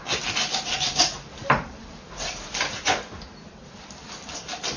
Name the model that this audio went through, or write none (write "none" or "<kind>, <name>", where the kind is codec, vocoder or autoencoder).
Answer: vocoder, BigVGAN v2